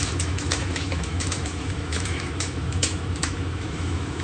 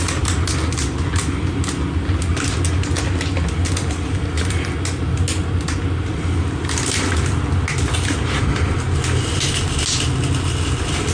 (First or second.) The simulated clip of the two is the first